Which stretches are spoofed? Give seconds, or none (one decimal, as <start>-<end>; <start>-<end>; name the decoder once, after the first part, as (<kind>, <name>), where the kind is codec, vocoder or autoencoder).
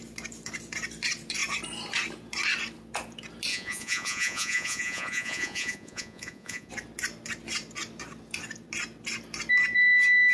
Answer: 3.5-6.7 (vocoder, Vocos)